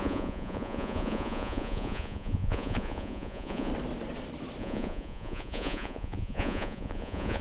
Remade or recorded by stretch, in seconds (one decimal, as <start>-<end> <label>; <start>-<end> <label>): 0.0-3.7 remade; 3.7-4.6 recorded; 4.6-7.4 remade